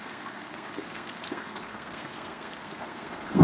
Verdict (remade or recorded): remade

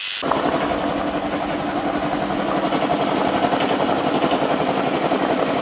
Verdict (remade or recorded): recorded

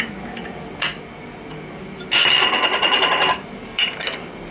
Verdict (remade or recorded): recorded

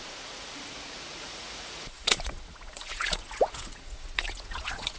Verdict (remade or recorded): remade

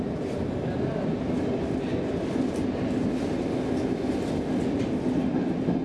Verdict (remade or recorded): recorded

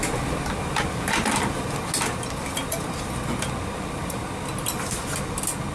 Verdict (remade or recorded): recorded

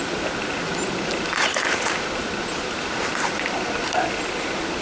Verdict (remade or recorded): recorded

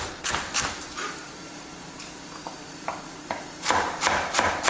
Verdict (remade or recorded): remade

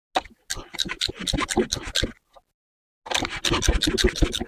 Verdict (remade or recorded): recorded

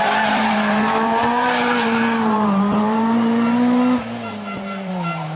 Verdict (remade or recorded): remade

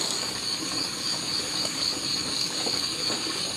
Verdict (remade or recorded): remade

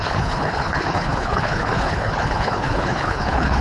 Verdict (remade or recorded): remade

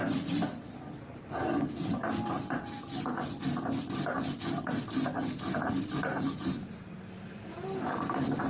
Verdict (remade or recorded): recorded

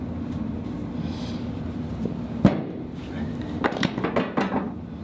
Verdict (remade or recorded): recorded